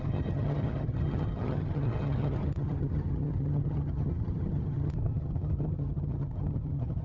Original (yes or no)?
no